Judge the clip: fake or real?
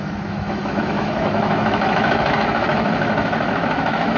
fake